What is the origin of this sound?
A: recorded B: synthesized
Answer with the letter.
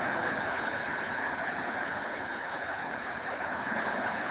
B